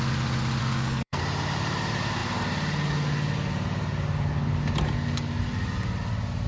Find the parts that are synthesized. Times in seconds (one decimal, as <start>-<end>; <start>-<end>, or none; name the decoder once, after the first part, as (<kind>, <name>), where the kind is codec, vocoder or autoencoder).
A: 0.6-1.2 (codec, SNAC)